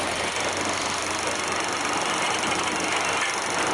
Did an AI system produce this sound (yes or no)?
no